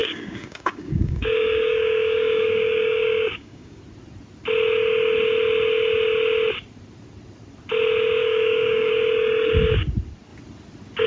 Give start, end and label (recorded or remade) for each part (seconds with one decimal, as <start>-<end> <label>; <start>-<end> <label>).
0.0-3.8 remade; 3.8-8.2 recorded; 8.2-8.9 remade; 8.9-11.1 recorded